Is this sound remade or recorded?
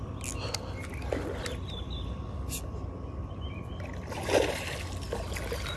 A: recorded